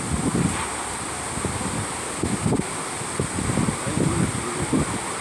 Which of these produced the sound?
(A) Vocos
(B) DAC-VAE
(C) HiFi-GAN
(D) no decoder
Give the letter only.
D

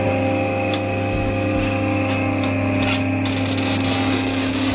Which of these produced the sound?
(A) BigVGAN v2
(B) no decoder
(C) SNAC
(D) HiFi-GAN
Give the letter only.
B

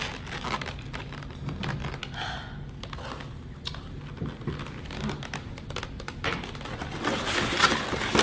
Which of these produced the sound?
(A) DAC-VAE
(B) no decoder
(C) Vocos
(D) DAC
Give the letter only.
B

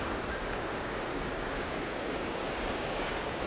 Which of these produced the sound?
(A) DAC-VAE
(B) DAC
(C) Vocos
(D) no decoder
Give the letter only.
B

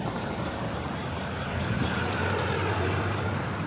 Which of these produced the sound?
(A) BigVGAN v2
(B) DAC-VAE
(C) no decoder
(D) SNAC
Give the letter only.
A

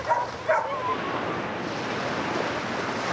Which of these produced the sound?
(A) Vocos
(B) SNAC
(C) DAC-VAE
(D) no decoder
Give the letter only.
D